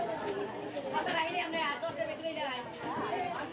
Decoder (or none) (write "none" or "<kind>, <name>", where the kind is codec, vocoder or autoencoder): none